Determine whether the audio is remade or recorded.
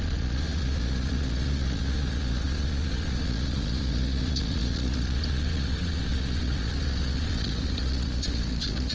remade